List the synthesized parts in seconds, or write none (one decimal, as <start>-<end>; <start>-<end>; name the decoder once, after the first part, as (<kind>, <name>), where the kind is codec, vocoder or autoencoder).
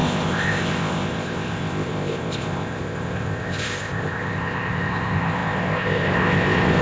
0.0-6.8 (codec, ZipCodec)